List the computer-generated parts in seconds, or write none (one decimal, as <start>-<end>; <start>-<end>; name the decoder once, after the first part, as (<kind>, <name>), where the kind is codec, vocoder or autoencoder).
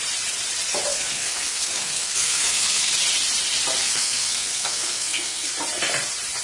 0.9-2.9 (codec, SNAC); 3.8-5.5